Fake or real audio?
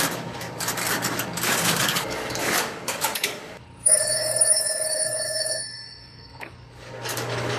fake